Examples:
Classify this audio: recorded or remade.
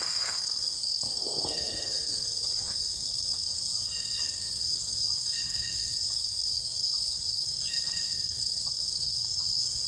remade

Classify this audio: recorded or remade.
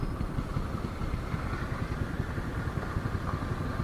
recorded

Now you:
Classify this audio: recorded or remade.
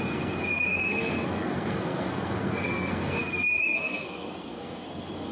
remade